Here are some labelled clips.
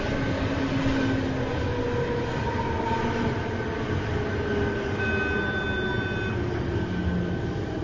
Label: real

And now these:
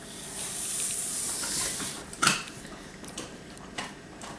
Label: fake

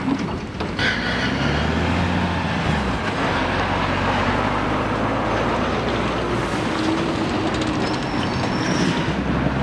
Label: real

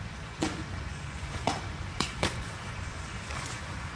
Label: fake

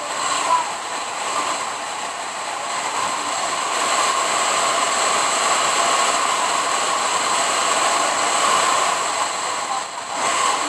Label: real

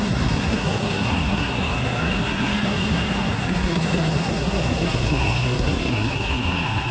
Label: fake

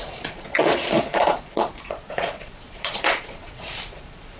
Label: fake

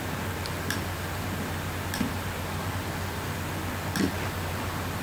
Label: real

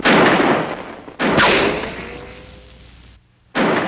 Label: real